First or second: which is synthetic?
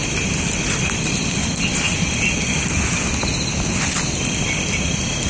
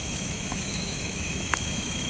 second